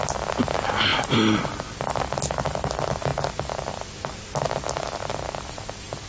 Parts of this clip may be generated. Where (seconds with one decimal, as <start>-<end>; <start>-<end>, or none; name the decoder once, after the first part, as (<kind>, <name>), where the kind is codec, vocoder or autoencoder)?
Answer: 0.9-1.6 (vocoder, BigVGAN v2)

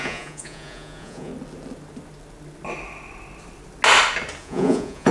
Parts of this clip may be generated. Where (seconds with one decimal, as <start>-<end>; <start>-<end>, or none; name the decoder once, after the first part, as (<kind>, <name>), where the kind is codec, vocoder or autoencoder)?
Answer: 0.0-1.3 (vocoder, Vocos); 4.4-5.1

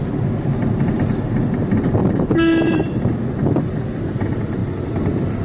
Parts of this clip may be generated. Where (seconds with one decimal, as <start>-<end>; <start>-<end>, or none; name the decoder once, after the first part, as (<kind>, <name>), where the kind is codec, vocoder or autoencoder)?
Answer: 0.0-0.5 (vocoder, BigVGAN v2); 2.0-3.6; 4.6-5.4

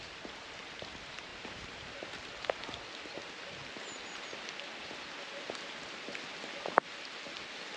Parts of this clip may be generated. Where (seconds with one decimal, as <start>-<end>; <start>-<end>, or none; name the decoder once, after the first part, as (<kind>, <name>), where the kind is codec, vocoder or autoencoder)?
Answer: 1.3-2.6 (vocoder, BigVGAN v2)

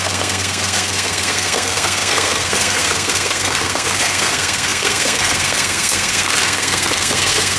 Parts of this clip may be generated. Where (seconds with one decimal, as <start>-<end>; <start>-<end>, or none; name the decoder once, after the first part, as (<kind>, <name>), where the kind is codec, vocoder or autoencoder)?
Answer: 0.0-7.6 (codec, SNAC)

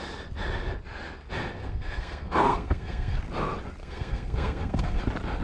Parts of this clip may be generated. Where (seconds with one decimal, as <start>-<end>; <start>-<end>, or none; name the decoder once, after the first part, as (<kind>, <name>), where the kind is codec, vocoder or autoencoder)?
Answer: 1.6-3.2 (codec, SNAC); 3.8-5.0

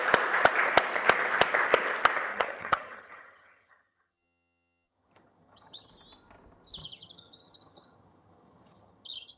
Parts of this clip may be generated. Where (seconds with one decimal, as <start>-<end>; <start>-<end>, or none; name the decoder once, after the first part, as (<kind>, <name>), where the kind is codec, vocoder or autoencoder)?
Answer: 2.3-5.9 (vocoder, HiFi-GAN); 6.8-9.4

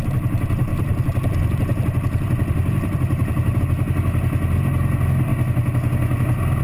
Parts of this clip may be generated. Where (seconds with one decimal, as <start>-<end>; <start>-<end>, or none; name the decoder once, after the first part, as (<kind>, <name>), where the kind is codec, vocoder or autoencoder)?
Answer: 0.7-3.6 (vocoder, BigVGAN v2)